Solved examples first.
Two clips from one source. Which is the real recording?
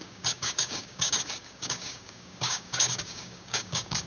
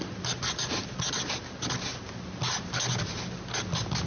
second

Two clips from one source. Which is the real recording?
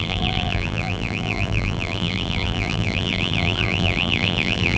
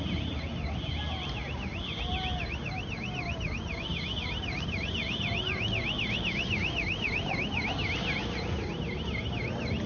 second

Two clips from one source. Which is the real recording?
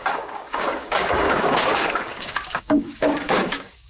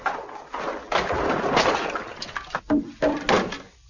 second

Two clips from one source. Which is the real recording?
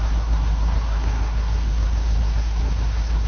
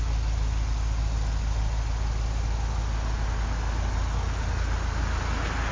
second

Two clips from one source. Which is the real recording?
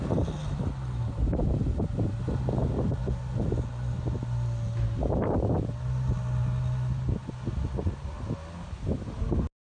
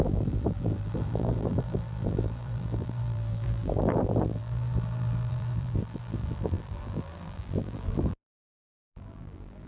first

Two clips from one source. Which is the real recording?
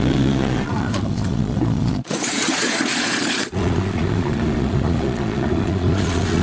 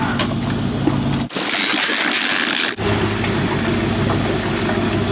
second